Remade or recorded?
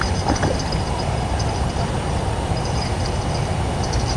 recorded